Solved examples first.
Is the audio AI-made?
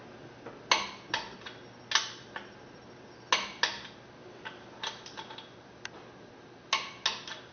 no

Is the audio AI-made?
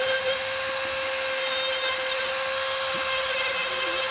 no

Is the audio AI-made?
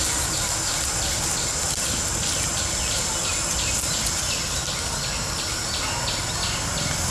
no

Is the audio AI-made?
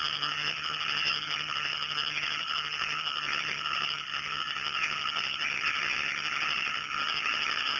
yes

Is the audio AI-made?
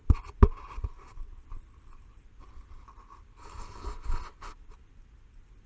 no